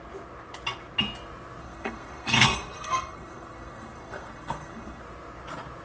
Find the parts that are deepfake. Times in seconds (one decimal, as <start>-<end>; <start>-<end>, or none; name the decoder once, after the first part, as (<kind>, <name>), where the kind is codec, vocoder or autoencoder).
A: 1.6-5.0 (codec, SNAC)